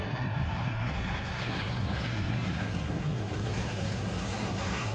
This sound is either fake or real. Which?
fake